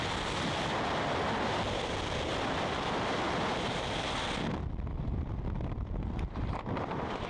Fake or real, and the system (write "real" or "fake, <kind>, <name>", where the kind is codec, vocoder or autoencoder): real